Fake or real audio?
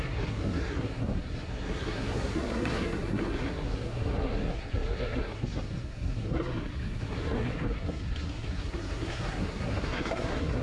fake